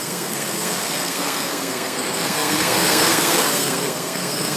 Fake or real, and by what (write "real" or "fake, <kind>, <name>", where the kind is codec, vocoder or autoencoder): fake, codec, SNAC